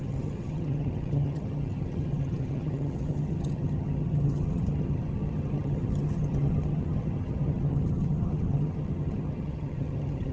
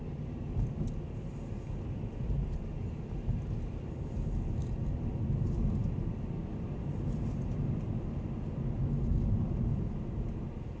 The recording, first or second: second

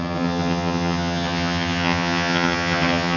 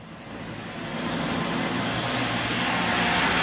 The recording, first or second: second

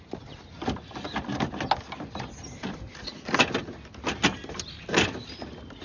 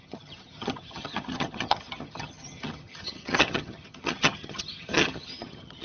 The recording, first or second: first